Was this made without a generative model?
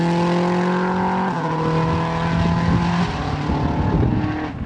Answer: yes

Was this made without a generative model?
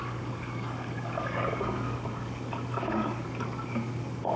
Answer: no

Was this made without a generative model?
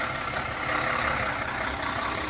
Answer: yes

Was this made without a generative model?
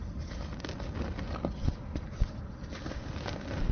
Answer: yes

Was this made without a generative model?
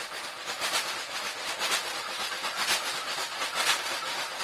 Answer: yes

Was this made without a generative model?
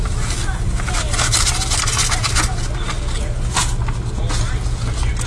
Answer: yes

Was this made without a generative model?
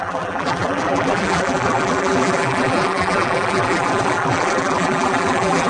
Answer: no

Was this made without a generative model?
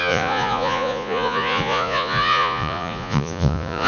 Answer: no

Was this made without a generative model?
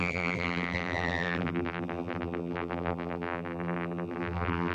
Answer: no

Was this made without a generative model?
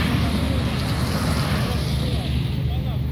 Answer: yes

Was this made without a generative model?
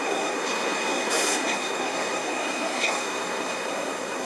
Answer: no